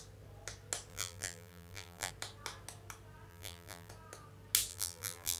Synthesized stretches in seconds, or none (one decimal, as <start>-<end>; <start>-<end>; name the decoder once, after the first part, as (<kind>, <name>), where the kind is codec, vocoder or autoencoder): 0.9-2.1 (vocoder, BigVGAN v2); 3.3-3.9; 4.7-5.4

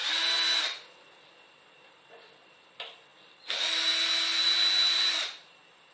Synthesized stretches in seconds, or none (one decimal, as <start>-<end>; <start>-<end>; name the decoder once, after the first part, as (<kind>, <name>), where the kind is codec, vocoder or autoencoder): none

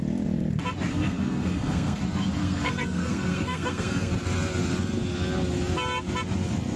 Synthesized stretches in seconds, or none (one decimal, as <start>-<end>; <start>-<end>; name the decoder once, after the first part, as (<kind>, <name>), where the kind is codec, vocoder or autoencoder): 0.9-2.0 (codec, SNAC); 2.4-4.1

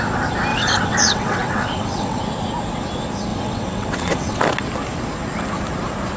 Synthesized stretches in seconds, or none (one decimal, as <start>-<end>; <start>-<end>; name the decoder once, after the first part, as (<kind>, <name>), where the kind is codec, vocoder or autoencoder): 0.5-2.2 (vocoder, WaveNeXt); 3.3-4.4